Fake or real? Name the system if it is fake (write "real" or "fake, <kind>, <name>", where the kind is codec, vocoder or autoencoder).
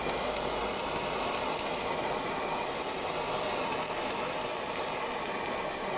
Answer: real